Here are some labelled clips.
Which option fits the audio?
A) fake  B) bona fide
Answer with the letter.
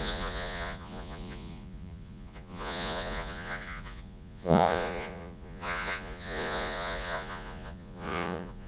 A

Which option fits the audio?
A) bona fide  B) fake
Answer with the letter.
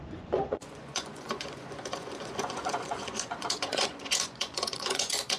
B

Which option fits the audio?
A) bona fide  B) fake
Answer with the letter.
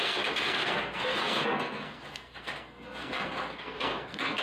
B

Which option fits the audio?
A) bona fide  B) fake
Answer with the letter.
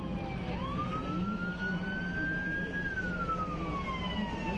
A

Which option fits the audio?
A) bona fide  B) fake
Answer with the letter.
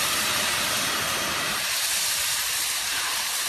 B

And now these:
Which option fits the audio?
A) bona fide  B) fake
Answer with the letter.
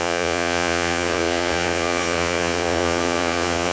B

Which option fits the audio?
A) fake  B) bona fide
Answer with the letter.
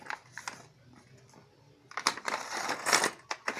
B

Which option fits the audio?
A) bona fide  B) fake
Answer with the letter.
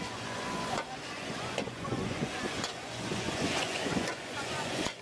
B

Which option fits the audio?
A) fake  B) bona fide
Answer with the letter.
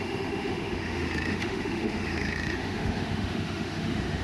A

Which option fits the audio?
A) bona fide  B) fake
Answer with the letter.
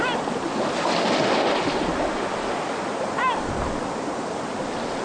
A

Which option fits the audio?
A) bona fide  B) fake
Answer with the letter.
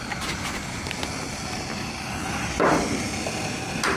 A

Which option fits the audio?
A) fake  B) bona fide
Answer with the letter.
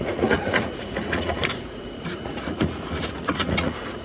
A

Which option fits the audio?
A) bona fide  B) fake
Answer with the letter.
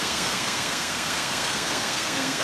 B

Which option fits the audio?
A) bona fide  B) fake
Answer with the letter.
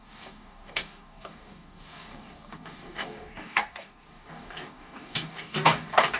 B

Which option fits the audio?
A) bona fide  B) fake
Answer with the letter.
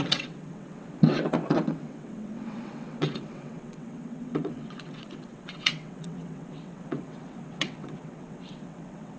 B